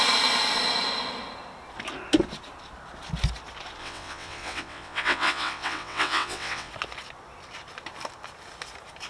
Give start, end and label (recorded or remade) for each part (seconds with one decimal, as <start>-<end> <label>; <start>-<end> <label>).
0.0-3.8 recorded; 3.8-6.7 remade; 6.7-9.1 recorded